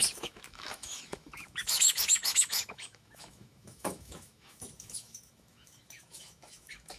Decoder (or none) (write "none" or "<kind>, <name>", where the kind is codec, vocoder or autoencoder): autoencoder, DAC-VAE